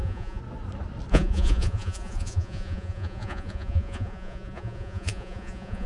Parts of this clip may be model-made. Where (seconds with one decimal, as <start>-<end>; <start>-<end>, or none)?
0.0-0.4; 1.1-5.9